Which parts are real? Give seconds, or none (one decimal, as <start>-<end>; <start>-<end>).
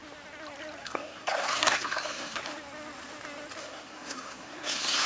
0.0-0.8; 2.4-3.6